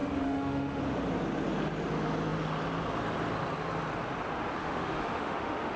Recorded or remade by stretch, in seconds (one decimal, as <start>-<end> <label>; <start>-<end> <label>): 0.0-0.8 remade; 0.8-4.6 recorded; 4.6-5.8 remade